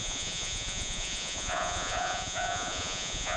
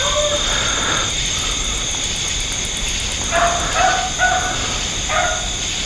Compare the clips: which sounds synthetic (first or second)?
first